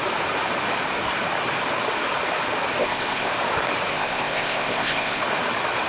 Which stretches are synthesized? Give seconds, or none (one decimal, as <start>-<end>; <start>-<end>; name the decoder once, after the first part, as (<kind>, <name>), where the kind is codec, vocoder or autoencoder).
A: 2.8-3.3 (codec, ZipCodec); 3.9-5.2